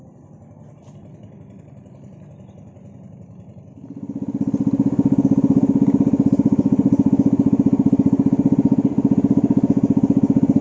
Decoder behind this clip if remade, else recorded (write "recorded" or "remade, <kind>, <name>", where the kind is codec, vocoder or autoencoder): recorded